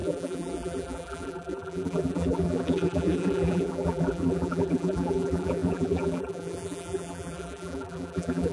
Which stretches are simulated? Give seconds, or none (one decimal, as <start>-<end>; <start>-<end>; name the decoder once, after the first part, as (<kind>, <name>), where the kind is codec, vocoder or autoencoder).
0.0-8.5 (vocoder, BigVGAN v2)